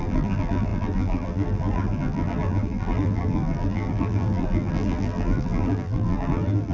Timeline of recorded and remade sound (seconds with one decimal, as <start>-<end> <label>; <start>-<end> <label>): 0.0-6.7 remade